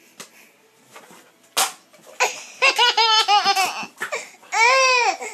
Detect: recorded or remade recorded